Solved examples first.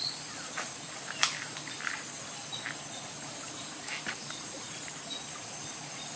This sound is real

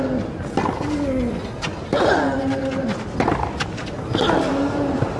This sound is real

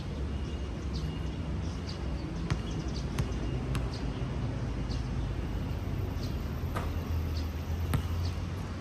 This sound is real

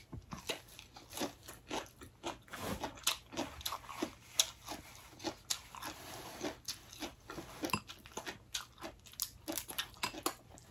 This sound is real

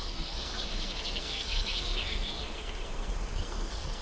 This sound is fake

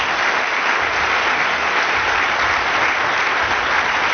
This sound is real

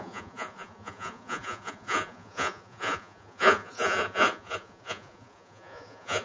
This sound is fake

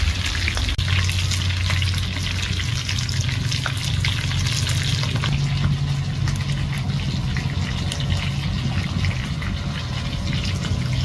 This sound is real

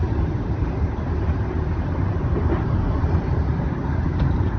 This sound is fake